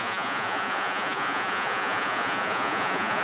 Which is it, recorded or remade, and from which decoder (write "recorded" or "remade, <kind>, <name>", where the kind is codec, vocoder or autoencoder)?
remade, vocoder, Vocos